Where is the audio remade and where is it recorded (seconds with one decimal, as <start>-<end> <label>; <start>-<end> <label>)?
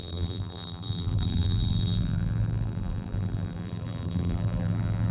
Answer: 0.0-5.1 remade